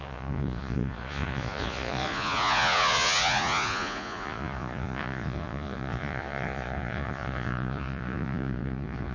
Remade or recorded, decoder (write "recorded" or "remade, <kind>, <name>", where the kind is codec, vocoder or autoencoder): remade, vocoder, Vocos